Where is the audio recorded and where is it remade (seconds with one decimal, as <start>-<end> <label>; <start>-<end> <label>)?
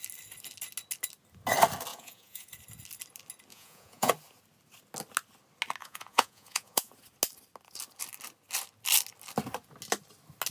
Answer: 0.0-1.9 recorded; 1.9-2.5 remade; 2.5-3.5 recorded; 3.5-4.1 remade; 4.1-5.8 recorded; 5.8-6.9 remade; 6.9-10.5 recorded